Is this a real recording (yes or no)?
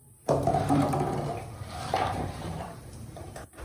no